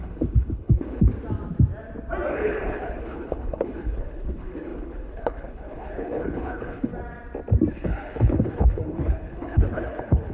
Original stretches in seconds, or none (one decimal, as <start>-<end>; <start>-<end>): 1.1-2.3; 6.9-7.7